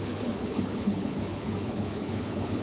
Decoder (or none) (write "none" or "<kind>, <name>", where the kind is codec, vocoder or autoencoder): codec, HILCodec